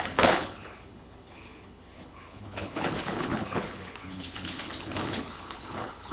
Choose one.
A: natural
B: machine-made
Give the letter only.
B